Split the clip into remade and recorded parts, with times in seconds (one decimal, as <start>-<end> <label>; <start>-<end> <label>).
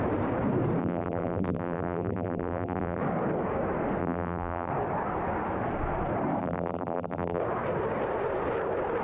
0.0-0.8 recorded; 0.8-3.0 remade; 3.0-4.0 recorded; 4.0-4.7 remade; 4.7-6.4 recorded; 6.4-7.4 remade; 7.4-9.0 recorded